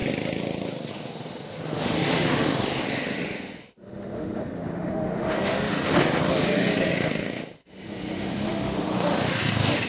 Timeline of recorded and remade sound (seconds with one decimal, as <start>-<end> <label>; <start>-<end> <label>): 0.0-0.9 recorded; 0.9-9.9 remade